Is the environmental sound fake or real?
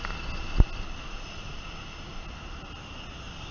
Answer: real